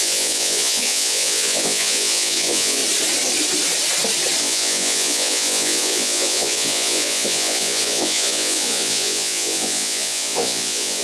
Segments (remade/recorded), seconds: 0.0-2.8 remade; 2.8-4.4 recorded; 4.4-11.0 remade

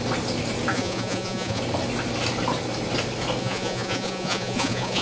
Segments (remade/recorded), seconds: 0.0-0.7 recorded; 0.7-1.6 remade; 1.6-3.4 recorded; 3.4-5.0 remade

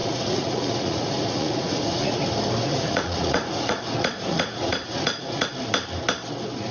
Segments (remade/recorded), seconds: 0.0-2.2 remade; 2.2-2.7 recorded; 2.7-5.5 remade; 5.5-6.7 recorded

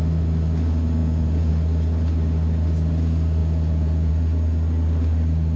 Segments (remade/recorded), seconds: 0.0-1.0 recorded; 1.0-1.5 remade; 1.5-3.4 recorded; 3.4-4.1 remade; 4.1-5.6 recorded

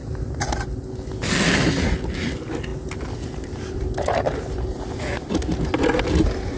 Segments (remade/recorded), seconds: 0.0-6.6 recorded

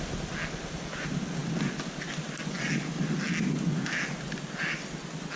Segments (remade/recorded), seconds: 0.0-5.4 recorded